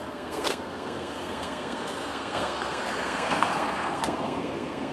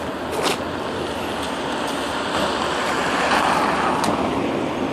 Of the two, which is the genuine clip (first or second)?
second